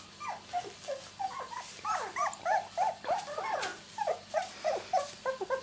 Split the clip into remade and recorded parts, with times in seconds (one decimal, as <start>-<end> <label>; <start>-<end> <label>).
0.0-5.6 recorded